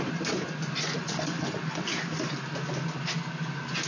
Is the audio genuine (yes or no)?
yes